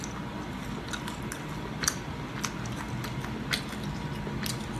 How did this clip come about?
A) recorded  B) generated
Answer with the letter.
A